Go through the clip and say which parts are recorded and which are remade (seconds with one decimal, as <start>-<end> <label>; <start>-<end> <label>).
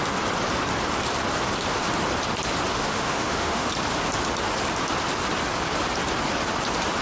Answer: 0.0-2.7 recorded; 2.7-3.7 remade; 3.7-7.0 recorded